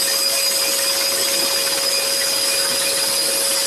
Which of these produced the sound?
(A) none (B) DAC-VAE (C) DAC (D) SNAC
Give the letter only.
A